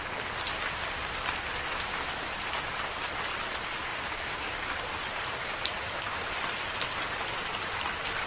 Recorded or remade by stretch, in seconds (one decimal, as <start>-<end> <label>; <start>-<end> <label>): 0.0-3.9 recorded; 3.9-6.3 remade; 6.3-8.3 recorded